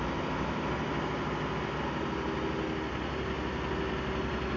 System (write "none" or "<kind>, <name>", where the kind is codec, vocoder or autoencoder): none